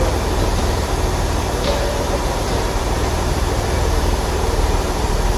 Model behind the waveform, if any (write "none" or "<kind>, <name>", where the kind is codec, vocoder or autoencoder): vocoder, BigVGAN v2